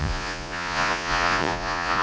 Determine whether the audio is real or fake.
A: fake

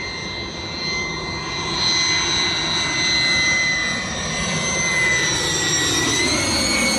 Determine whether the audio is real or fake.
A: real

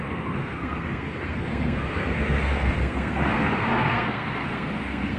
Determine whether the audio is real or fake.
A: fake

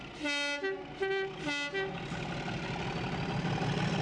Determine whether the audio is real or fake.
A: real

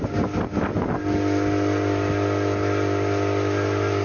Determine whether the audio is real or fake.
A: real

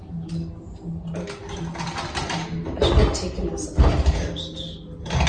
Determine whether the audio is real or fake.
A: real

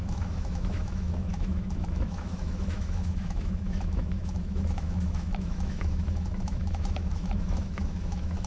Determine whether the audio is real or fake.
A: fake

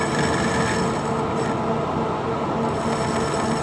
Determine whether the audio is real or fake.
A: real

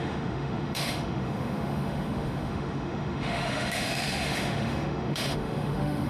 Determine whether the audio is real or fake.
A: fake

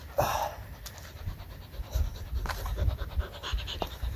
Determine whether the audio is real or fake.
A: fake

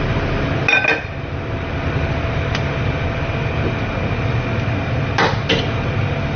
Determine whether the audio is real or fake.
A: real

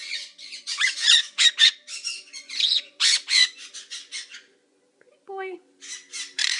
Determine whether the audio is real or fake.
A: fake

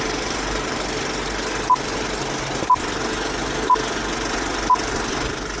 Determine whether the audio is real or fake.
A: real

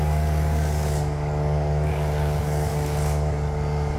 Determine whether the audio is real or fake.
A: fake